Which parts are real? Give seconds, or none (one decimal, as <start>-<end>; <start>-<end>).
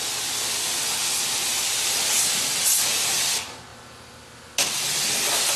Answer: 0.0-1.0; 1.9-5.6